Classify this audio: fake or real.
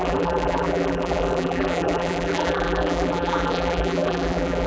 fake